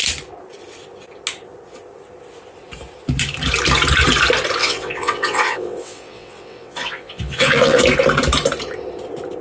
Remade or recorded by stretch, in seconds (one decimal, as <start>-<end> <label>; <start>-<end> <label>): 0.0-4.6 recorded; 4.6-7.8 remade; 7.8-9.4 recorded